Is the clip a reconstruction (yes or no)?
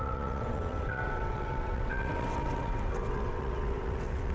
yes